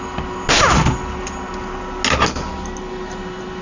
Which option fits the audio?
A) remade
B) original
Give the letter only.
B